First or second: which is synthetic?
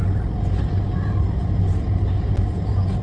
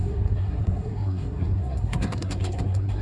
second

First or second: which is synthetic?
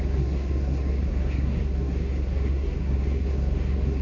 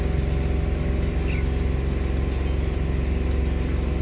first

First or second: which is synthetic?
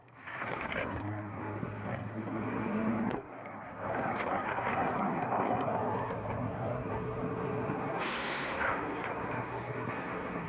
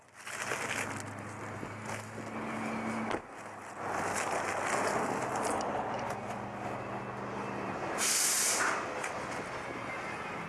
first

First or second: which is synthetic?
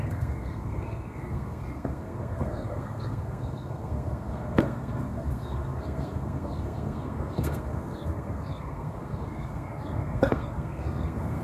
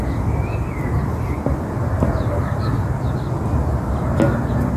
first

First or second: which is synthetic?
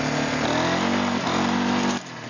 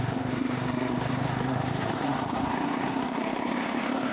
second